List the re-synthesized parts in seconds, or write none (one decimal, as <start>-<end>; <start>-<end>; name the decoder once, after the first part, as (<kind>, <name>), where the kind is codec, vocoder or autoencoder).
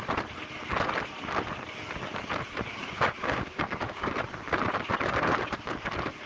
2.8-4.1 (codec, DAC)